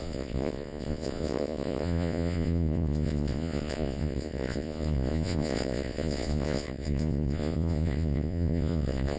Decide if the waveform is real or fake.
fake